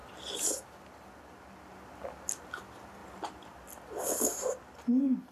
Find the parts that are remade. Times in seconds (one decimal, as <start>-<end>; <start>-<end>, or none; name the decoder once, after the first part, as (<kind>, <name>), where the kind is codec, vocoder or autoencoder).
none